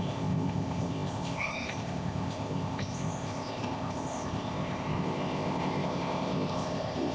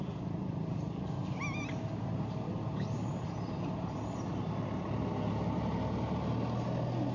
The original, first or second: second